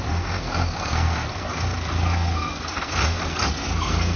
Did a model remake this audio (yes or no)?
yes